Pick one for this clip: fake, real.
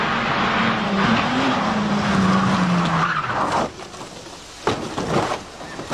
real